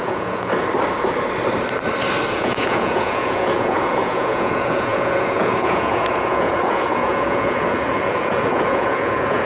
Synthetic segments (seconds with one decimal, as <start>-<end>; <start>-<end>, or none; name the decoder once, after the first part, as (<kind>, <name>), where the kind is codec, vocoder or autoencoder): 0.0-0.5 (vocoder, Vocos); 2.3-9.5